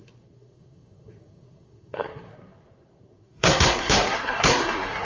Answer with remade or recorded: remade